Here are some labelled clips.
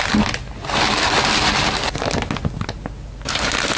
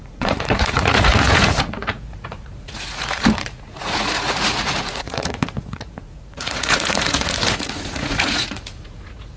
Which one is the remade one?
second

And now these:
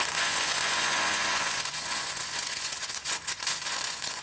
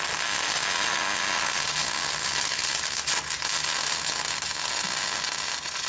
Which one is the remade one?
first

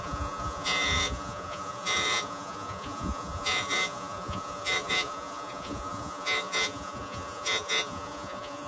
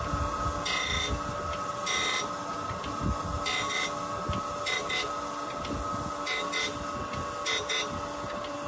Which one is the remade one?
first